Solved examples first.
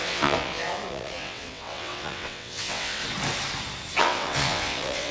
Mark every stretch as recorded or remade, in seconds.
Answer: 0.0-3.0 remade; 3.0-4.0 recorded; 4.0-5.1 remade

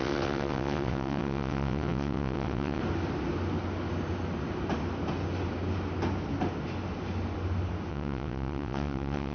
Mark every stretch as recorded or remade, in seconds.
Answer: 0.0-2.8 remade; 2.8-7.9 recorded; 7.9-9.3 remade

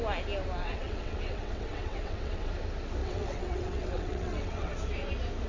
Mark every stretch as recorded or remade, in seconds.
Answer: 0.0-0.6 recorded; 0.6-2.5 remade; 2.5-3.0 recorded; 3.0-4.7 remade; 4.7-5.5 recorded

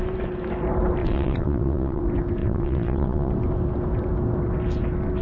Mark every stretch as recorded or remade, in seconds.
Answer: 0.0-1.0 recorded; 1.0-2.0 remade; 2.0-2.4 recorded; 2.4-3.3 remade; 3.3-5.2 recorded

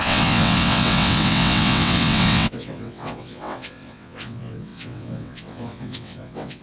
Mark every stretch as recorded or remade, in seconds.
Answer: 0.0-6.6 remade

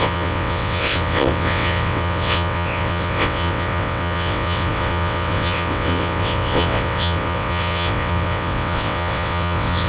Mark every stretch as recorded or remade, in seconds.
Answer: 0.0-9.9 remade